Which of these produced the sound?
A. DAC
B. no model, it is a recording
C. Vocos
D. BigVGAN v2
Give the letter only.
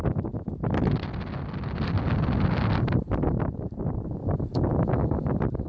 B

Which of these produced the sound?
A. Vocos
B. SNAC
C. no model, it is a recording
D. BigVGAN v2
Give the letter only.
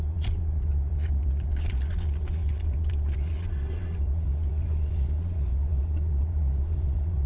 A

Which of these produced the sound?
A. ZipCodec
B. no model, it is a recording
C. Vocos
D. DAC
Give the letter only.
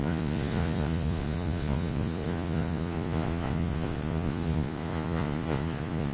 C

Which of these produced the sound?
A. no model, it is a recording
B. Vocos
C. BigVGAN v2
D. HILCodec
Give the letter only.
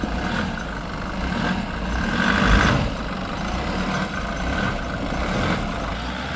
A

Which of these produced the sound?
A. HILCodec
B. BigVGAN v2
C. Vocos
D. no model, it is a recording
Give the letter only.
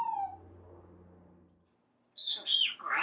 D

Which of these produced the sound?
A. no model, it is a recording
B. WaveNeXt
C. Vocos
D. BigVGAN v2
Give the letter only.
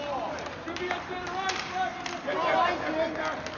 A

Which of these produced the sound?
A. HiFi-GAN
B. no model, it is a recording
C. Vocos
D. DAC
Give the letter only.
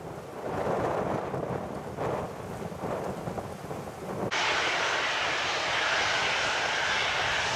B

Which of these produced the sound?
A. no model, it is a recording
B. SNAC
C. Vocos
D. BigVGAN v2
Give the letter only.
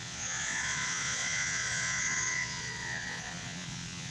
C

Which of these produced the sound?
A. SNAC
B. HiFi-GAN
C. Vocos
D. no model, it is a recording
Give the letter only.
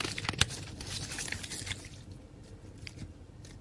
D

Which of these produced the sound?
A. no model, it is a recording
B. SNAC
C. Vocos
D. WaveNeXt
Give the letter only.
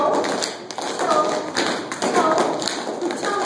A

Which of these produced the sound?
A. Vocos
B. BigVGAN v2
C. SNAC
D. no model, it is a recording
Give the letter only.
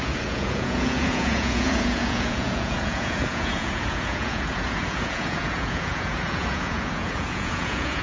A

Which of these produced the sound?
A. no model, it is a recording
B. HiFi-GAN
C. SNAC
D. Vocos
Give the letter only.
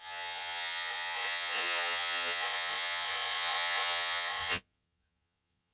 D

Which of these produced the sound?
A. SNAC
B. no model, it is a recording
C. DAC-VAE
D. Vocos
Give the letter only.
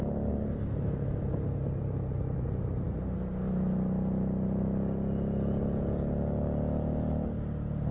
B